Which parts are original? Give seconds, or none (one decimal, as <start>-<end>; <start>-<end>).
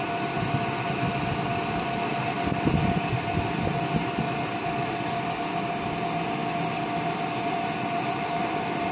0.0-8.9